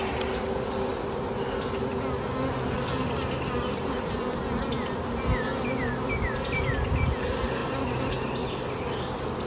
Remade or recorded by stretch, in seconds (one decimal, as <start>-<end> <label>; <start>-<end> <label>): 0.0-9.5 recorded